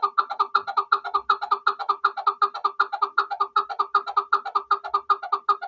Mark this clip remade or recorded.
recorded